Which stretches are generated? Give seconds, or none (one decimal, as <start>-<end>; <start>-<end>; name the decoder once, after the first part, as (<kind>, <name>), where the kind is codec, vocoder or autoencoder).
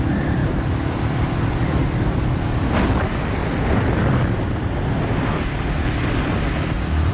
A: none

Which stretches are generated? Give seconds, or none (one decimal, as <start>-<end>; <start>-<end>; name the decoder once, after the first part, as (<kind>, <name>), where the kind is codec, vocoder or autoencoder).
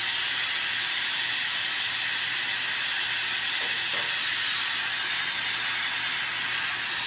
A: none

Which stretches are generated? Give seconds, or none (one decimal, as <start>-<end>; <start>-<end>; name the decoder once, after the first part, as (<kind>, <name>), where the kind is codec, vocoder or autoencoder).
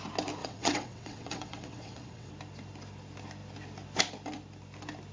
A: 0.4-2.3 (vocoder, WaveNeXt)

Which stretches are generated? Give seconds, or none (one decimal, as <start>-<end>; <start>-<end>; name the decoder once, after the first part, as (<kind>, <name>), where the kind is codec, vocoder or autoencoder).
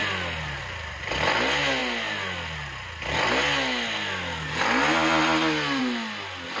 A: none